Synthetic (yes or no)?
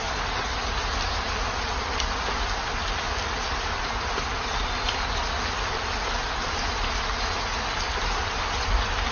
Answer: no